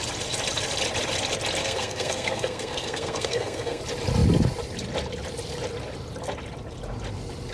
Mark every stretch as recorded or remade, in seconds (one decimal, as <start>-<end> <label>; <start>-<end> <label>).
0.0-1.6 recorded; 1.6-3.8 remade; 3.8-7.5 recorded